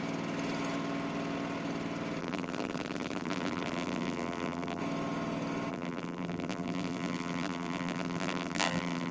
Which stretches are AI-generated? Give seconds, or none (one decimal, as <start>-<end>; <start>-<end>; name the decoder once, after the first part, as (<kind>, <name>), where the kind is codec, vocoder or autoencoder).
2.2-4.8 (vocoder, BigVGAN v2); 5.7-9.1